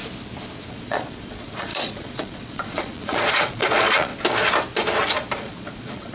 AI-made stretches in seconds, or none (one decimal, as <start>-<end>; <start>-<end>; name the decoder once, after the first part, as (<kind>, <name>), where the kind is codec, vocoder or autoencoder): 0.7-4.1 (vocoder, Vocos); 5.4-6.1